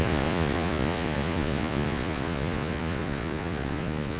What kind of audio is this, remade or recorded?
remade